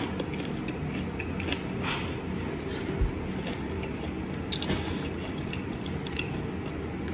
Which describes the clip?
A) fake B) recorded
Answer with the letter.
B